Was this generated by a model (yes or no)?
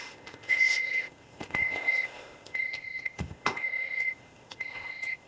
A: yes